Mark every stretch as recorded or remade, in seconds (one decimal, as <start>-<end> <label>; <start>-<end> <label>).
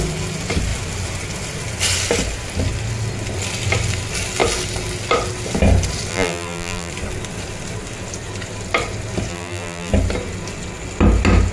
0.0-6.1 recorded; 6.1-6.9 remade; 6.9-9.3 recorded; 9.3-9.9 remade; 9.9-11.5 recorded